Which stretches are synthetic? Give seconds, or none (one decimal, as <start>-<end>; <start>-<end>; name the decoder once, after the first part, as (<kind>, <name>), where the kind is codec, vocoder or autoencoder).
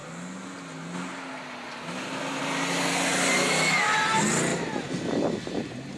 none